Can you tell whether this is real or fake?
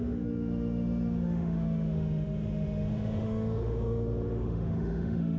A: fake